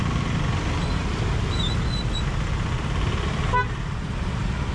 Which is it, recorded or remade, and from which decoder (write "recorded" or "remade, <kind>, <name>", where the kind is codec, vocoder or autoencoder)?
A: recorded